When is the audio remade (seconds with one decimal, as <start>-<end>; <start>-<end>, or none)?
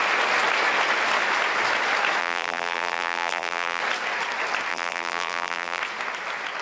2.2-3.8; 4.7-5.8